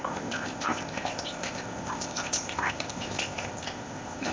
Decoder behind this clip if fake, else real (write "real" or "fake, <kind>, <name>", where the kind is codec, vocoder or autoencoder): fake, codec, ZipCodec